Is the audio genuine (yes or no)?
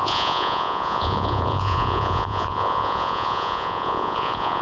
no